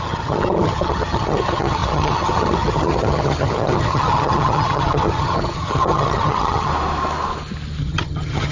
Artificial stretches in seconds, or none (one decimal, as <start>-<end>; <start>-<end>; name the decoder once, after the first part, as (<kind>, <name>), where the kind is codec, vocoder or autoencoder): 0.0-6.7 (vocoder, HiFi-GAN); 7.8-8.5